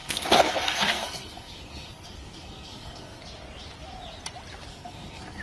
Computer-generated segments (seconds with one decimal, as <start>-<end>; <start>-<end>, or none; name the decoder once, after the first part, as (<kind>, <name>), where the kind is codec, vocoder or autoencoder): 0.0-3.2 (codec, SNAC); 4.7-5.4